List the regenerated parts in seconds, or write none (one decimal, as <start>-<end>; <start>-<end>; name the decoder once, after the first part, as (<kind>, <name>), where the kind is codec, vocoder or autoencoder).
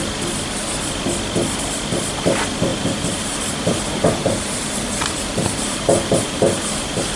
2.7-7.2 (vocoder, BigVGAN v2)